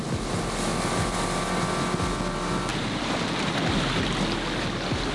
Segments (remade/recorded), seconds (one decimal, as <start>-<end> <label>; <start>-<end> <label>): 0.0-2.7 recorded; 2.7-3.5 remade; 3.5-5.1 recorded